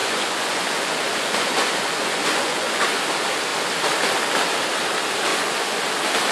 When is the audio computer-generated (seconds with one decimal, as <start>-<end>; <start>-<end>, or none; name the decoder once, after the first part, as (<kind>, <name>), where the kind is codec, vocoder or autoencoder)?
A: 0.0-3.0 (vocoder, Vocos); 5.3-5.8